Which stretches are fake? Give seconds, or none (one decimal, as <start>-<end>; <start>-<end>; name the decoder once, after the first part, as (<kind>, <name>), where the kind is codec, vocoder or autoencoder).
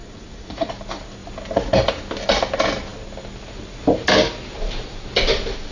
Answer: 0.0-0.7 (vocoder, Vocos)